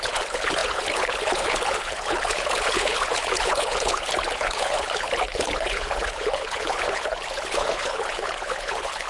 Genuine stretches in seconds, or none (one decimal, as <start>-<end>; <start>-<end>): none